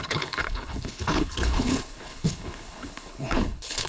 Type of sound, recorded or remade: remade